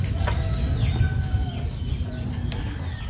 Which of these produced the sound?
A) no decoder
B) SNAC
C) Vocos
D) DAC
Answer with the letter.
A